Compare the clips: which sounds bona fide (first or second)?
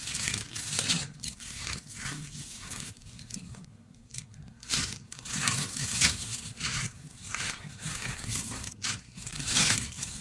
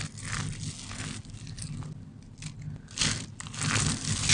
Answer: second